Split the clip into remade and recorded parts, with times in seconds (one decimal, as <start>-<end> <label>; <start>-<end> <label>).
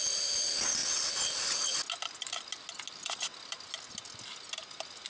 0.0-5.1 recorded